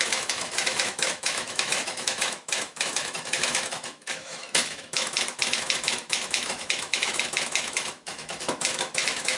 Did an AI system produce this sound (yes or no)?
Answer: yes